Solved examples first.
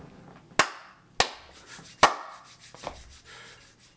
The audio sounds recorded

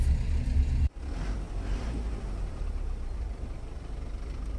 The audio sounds recorded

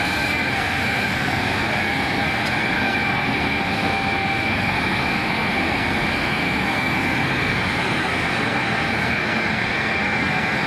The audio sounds remade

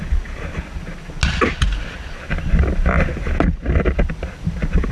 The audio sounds recorded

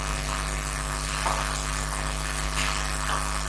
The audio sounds recorded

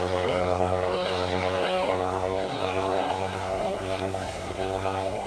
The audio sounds remade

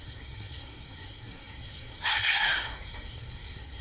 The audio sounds remade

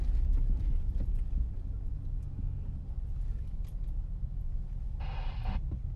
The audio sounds recorded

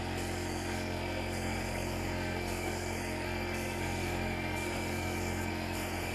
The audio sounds remade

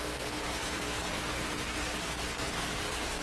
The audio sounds remade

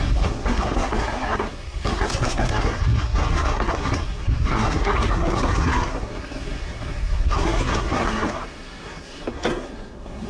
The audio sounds remade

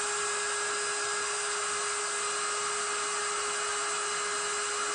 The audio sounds recorded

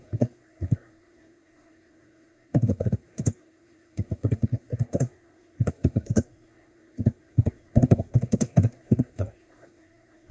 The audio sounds remade